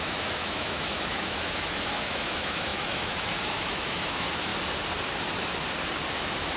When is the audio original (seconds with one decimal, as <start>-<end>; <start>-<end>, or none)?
4.5-6.6

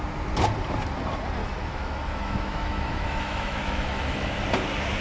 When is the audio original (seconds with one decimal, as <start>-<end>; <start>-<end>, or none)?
0.0-1.4; 4.4-5.0

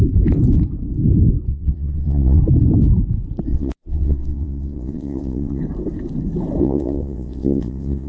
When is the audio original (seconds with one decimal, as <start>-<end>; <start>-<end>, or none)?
0.0-1.5; 2.4-3.5; 5.6-6.6

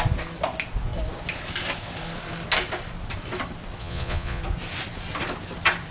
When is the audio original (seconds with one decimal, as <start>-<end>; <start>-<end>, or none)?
0.0-3.8; 4.4-5.9

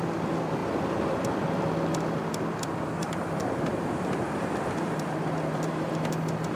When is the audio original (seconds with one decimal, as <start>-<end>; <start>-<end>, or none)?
0.0-0.6; 1.2-3.0; 5.9-6.6